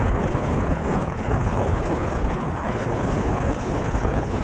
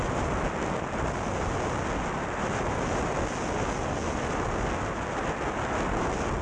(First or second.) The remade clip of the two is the first